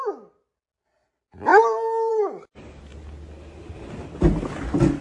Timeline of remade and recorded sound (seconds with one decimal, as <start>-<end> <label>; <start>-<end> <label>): 0.0-5.0 recorded